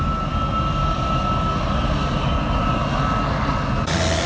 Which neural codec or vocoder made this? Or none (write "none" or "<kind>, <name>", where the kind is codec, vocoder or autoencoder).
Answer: none